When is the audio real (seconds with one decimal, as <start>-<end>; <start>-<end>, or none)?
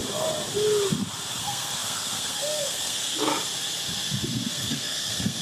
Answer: 0.0-1.3; 3.3-4.5